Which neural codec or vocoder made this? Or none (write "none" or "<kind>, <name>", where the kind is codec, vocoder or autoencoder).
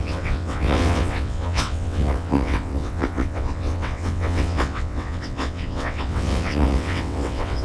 vocoder, WaveNeXt